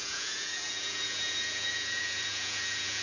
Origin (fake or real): fake